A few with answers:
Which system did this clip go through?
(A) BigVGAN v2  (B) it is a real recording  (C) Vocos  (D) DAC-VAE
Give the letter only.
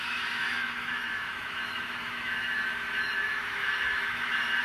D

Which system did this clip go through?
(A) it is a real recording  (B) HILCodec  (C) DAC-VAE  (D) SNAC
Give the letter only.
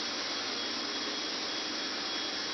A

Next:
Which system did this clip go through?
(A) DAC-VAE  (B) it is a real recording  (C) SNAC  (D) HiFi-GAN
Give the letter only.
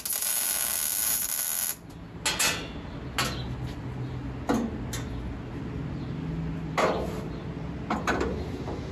B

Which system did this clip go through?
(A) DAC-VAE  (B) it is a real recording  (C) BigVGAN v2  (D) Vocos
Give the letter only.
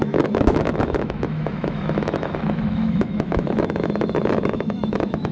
A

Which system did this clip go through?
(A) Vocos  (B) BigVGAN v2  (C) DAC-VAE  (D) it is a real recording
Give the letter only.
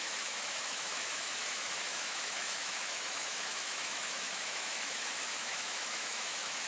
C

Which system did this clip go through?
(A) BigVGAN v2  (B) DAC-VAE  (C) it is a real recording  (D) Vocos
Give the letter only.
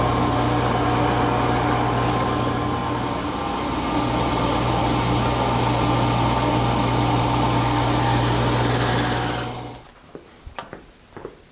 C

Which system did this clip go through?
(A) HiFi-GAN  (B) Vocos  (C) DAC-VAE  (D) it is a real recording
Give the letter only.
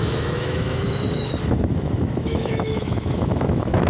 C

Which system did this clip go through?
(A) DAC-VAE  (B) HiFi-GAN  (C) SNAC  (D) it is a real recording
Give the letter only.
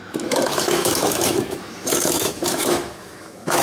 A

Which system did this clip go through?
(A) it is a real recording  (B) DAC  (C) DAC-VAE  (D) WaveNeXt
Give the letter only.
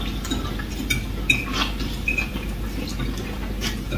A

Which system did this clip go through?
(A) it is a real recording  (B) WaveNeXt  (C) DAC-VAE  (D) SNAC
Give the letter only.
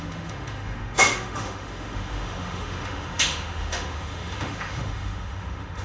C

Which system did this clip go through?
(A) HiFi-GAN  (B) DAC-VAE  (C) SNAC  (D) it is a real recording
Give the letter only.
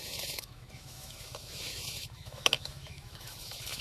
B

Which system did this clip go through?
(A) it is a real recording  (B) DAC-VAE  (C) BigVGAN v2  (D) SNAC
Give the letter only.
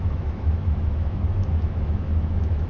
B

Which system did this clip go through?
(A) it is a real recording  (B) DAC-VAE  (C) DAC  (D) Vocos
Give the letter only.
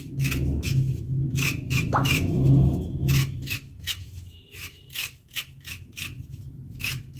B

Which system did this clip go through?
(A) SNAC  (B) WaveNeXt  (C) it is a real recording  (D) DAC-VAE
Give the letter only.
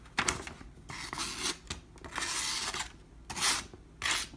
C